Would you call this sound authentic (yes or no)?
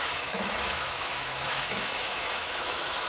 no